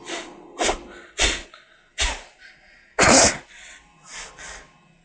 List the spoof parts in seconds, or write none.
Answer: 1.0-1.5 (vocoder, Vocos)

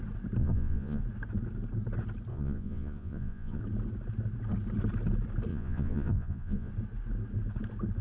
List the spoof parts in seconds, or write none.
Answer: 0.4-1.0 (vocoder, Vocos); 2.3-3.6; 5.5-6.7

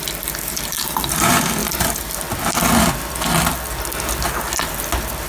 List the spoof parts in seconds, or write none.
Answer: none

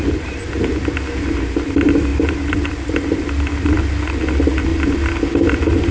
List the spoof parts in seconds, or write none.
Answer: none

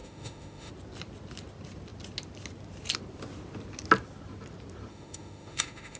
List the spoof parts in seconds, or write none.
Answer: 0.0-0.7 (autoencoder, DAC-VAE); 4.9-6.0

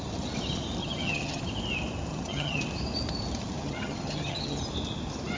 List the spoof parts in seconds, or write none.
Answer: 0.8-1.4 (vocoder, HiFi-GAN); 2.1-2.6; 3.6-4.6

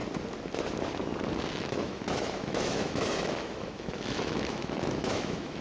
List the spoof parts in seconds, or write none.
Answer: 1.5-5.6 (autoencoder, DAC-VAE)